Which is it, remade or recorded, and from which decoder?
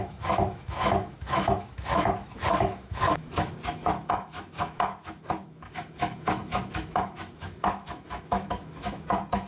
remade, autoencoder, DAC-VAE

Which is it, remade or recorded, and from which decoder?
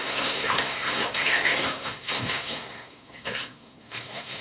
remade, codec, SNAC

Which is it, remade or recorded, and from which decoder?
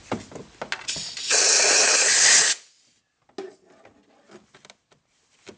recorded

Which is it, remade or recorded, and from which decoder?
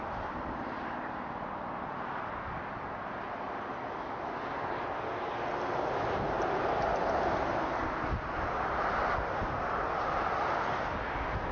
recorded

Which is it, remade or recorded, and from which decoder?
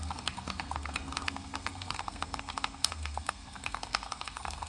remade, codec, SNAC